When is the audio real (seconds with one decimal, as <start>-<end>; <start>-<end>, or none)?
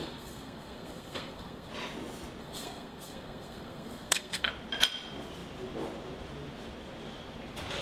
1.7-2.4; 4.5-7.8